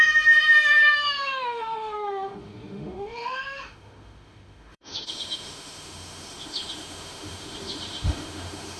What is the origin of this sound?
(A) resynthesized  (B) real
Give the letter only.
A